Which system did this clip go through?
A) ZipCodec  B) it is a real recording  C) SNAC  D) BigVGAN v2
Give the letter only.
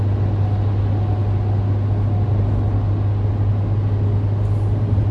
B